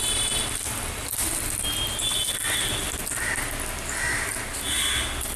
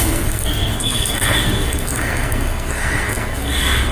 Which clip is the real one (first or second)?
first